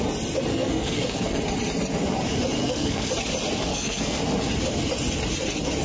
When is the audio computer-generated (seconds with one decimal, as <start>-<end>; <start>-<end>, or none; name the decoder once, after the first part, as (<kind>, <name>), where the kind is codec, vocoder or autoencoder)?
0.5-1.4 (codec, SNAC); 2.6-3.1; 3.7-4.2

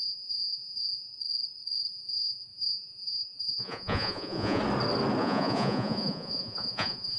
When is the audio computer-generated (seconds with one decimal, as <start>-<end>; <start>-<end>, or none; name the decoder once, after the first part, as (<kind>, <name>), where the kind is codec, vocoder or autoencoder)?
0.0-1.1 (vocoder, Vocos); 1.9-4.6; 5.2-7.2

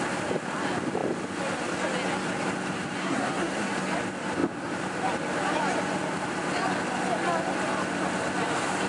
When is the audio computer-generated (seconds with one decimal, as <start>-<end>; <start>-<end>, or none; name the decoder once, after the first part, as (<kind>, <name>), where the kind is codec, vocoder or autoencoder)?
3.0-3.7 (codec, SNAC)